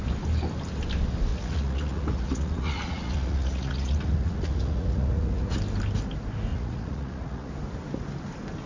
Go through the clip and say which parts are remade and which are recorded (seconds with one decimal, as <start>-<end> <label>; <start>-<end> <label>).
0.0-1.3 recorded; 1.3-5.6 remade; 5.6-6.5 recorded; 6.5-7.5 remade; 7.5-8.7 recorded